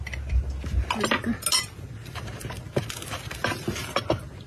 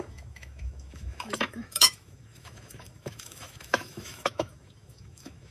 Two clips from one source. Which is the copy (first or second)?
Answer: second